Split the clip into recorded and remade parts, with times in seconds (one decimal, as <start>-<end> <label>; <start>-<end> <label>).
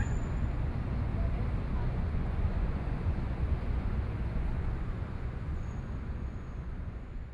0.0-1.1 remade; 1.1-1.7 recorded; 1.7-7.3 remade